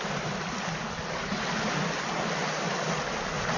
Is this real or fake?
real